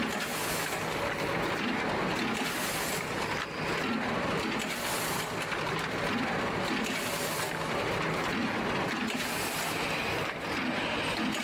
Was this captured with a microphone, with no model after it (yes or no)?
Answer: yes